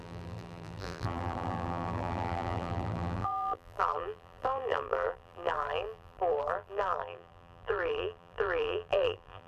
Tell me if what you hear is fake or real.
fake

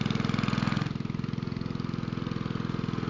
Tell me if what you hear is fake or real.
real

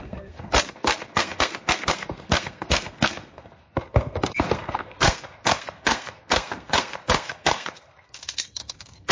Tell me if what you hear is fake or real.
fake